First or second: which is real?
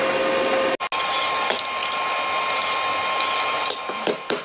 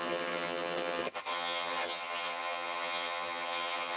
first